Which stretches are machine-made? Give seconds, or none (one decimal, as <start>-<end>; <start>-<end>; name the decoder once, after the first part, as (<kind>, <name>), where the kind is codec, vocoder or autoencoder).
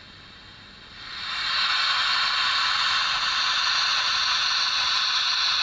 3.4-5.6 (vocoder, Vocos)